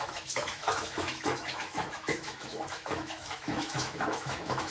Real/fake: fake